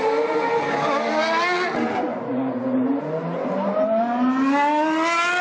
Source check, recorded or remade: recorded